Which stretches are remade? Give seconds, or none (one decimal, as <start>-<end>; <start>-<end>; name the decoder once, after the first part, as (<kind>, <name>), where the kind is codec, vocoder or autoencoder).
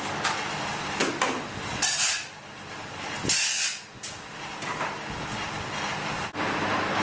none